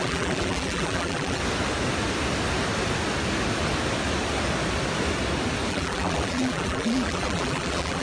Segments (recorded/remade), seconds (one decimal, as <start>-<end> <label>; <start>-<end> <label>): 0.0-1.4 remade; 1.4-5.7 recorded; 5.7-8.0 remade